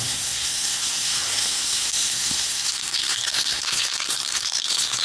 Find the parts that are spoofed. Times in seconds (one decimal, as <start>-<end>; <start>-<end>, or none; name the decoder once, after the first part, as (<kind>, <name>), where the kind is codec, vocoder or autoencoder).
0.0-5.0 (codec, SNAC)